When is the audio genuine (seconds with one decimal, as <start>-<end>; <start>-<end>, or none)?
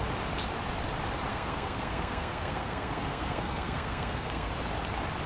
0.0-1.3; 4.5-5.3